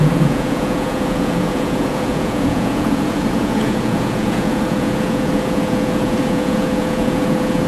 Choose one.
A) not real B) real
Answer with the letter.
A